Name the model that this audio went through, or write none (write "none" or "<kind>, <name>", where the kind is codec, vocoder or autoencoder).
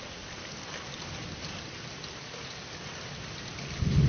none